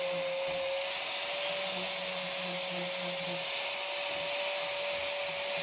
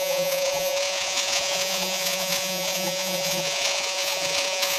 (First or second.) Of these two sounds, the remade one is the second